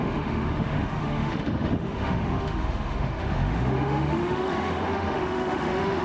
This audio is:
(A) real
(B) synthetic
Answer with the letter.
B